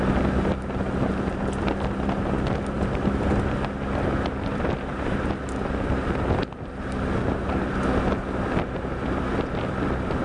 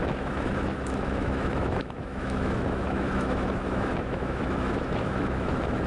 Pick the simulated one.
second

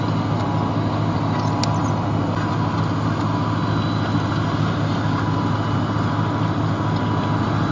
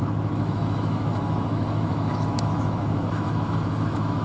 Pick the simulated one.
second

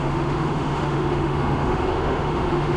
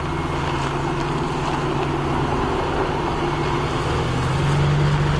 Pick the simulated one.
first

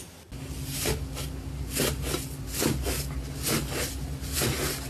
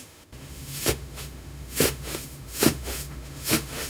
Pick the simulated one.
second